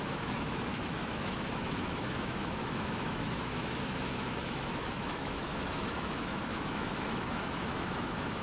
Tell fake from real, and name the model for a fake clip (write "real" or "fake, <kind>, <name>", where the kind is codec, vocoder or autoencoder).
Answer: fake, autoencoder, DAC-VAE